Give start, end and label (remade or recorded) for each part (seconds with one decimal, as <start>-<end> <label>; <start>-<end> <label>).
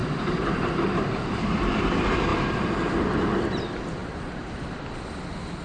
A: 0.0-1.8 remade; 1.8-4.0 recorded; 4.0-4.5 remade; 4.5-5.6 recorded